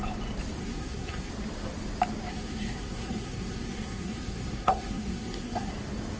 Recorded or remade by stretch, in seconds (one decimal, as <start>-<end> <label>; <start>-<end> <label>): 0.0-0.6 recorded; 0.6-1.3 remade; 1.3-2.3 recorded; 2.3-5.7 remade; 5.7-6.2 recorded

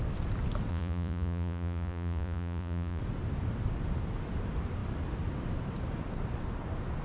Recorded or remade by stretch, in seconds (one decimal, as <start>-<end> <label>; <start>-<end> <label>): 0.0-0.7 recorded; 0.7-3.0 remade; 3.0-7.0 recorded

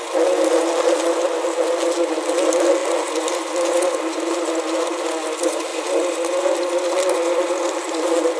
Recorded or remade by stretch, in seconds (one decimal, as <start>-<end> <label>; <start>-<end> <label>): 0.0-8.4 recorded